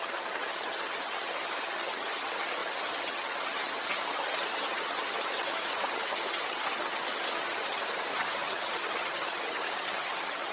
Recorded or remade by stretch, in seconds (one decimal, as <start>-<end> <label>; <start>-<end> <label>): 0.0-10.5 remade